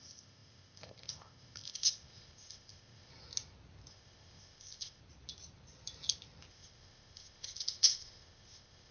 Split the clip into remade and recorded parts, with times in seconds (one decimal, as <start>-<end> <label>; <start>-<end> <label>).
0.0-3.1 remade; 3.1-3.9 recorded; 3.9-5.0 remade; 5.0-6.5 recorded; 6.5-8.9 remade